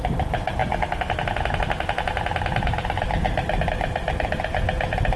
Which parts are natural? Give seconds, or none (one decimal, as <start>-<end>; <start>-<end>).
0.0-5.2